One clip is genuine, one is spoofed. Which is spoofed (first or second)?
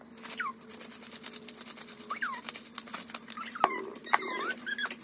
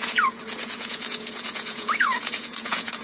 second